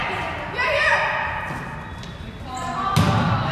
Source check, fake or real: real